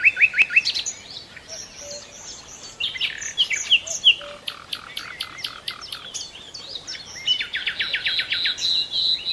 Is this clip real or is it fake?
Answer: real